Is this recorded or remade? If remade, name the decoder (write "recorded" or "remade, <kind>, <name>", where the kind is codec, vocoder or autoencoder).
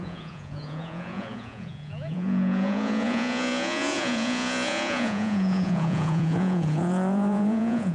remade, vocoder, Vocos